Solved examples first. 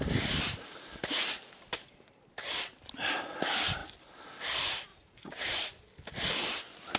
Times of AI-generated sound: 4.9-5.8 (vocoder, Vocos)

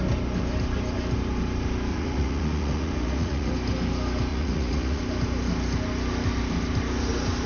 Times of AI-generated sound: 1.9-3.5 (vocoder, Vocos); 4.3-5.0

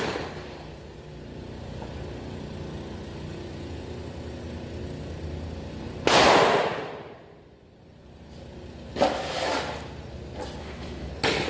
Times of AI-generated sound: 10.6-11.1 (autoencoder, DAC-VAE)

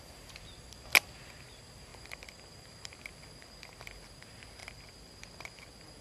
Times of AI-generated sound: 1.9-3.0 (vocoder, BigVGAN v2); 4.6-6.0

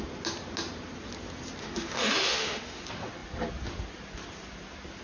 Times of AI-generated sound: 1.6-2.8 (autoencoder, DAC-VAE)